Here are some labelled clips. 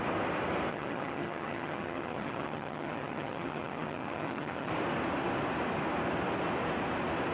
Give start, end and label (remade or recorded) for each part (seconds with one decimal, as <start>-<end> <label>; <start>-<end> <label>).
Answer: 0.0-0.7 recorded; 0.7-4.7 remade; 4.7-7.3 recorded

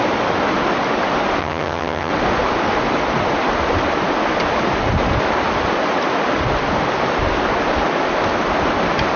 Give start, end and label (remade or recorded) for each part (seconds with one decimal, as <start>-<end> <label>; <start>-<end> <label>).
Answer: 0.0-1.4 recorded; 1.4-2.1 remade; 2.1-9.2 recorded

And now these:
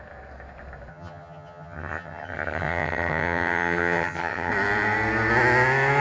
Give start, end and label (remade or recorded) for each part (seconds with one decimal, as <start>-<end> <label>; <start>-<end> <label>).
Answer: 0.0-0.9 recorded; 0.9-4.5 remade; 4.5-6.0 recorded